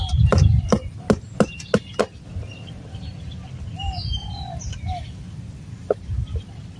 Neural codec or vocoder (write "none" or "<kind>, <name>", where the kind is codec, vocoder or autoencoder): none